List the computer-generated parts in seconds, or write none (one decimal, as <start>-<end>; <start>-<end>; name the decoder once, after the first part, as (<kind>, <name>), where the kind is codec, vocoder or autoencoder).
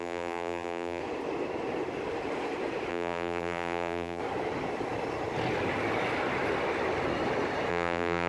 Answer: 0.0-1.0 (vocoder, BigVGAN v2); 2.9-4.2; 7.7-8.3